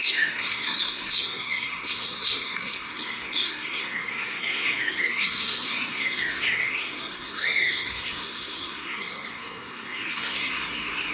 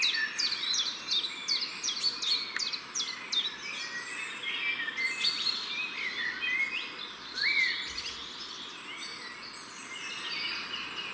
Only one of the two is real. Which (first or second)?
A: second